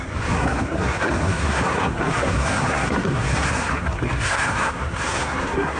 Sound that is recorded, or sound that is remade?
remade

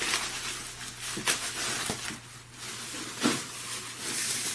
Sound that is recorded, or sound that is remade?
recorded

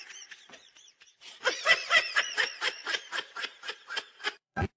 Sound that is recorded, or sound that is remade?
remade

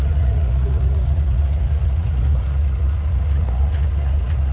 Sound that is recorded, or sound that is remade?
remade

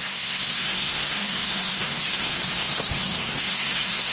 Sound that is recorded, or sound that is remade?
remade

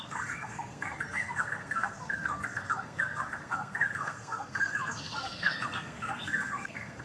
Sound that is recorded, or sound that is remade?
remade